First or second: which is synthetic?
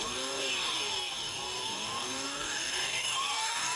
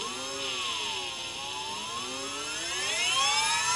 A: first